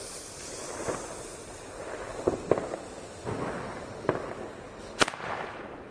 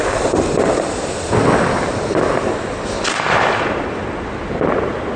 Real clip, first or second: first